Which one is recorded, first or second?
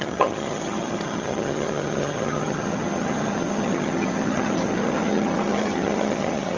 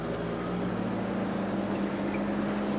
second